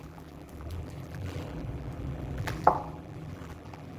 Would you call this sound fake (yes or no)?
yes